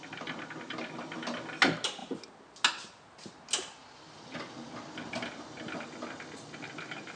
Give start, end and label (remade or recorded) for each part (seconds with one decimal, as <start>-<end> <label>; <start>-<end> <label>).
0.0-7.2 recorded